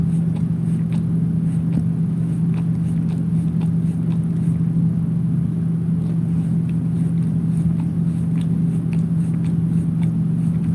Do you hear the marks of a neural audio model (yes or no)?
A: no